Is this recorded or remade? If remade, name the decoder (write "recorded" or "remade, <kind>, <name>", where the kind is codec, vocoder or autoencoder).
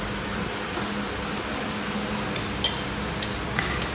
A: recorded